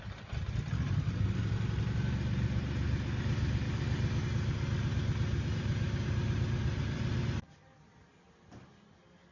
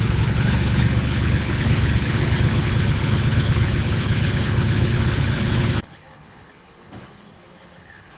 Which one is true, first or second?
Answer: first